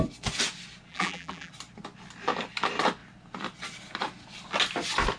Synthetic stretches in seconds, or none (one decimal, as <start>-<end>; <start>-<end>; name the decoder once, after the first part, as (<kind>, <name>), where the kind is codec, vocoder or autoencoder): 0.9-1.5 (vocoder, BigVGAN v2)